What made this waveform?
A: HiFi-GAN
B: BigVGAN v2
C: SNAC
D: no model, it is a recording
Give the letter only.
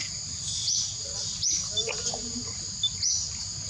D